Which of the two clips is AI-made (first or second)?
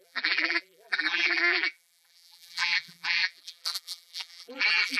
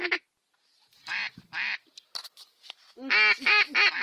first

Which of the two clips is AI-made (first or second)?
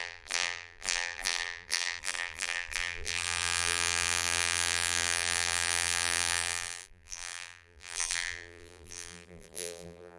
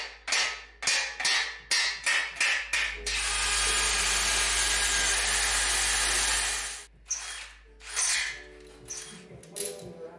first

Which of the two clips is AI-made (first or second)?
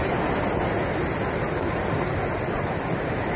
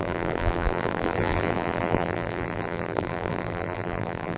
second